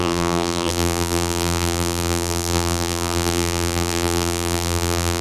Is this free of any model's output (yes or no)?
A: no